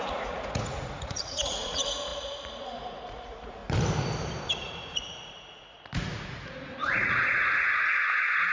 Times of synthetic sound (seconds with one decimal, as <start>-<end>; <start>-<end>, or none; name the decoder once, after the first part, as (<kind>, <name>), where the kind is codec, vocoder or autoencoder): 0.0-3.6 (vocoder, Vocos); 4.6-8.5